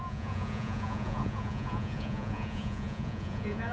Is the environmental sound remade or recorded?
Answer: remade